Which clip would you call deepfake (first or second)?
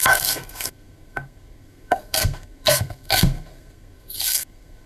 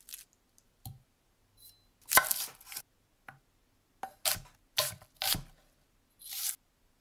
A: first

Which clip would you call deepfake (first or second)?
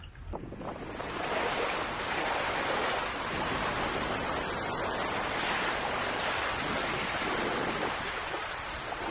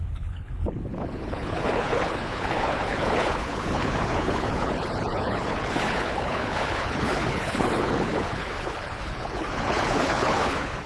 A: second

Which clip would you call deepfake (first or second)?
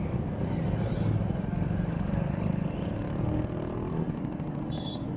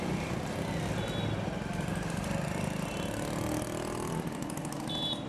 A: first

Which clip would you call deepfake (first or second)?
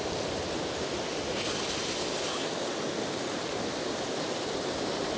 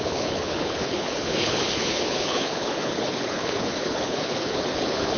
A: second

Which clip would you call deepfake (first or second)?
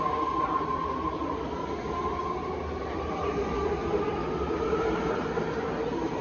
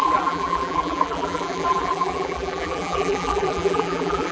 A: second